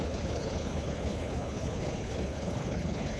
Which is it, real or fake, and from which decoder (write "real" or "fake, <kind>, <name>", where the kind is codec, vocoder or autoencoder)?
fake, codec, HILCodec